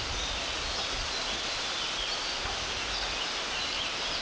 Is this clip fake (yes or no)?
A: no